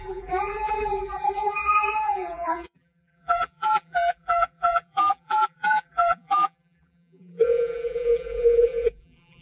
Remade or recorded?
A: remade